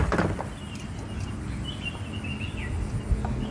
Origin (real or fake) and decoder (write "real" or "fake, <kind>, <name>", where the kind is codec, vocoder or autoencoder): real